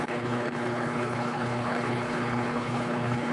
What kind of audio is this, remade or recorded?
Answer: remade